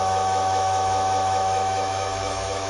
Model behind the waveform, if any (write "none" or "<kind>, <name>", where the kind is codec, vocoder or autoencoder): autoencoder, DAC-VAE